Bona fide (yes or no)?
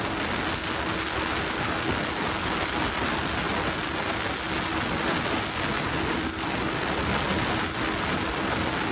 yes